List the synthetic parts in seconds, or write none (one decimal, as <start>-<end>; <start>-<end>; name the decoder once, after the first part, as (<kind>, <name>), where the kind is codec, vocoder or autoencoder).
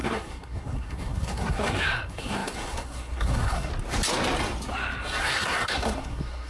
0.0-3.7 (codec, SNAC); 5.2-6.5